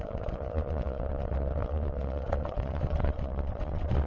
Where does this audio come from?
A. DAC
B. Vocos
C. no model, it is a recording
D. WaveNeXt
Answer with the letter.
D